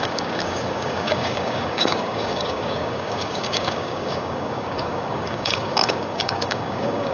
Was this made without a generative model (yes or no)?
no